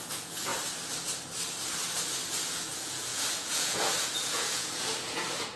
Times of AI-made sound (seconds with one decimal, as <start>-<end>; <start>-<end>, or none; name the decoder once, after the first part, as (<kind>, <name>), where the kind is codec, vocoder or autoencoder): 0.0-0.5 (vocoder, Vocos); 2.3-5.6